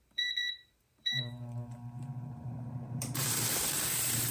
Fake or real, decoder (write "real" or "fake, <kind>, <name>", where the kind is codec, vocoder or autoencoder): fake, vocoder, BigVGAN v2